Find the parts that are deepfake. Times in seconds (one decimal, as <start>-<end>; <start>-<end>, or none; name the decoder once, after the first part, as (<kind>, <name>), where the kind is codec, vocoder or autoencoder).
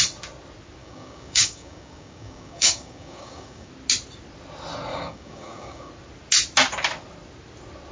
0.8-3.7 (codec, DAC); 4.9-5.9